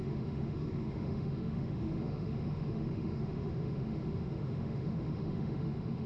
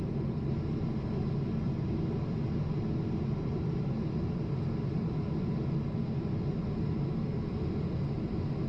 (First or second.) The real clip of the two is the second